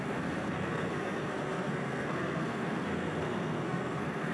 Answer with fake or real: fake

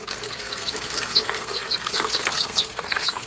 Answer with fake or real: fake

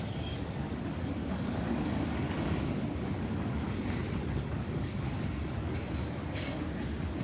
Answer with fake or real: fake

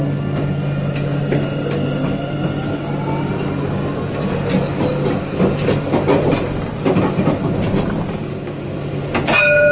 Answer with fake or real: real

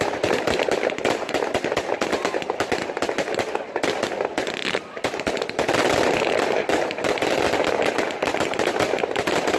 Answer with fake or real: real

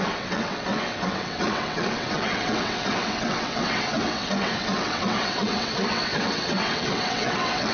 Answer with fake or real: fake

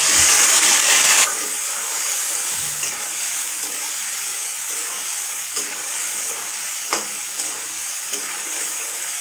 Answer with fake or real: fake